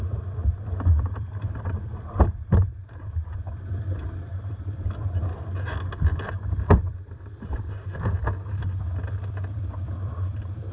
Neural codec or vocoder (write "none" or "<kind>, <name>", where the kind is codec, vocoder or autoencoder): vocoder, BigVGAN v2